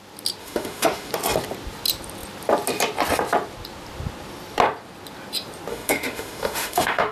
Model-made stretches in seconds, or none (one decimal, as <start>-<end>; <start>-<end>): 0.4-1.1; 5.7-7.1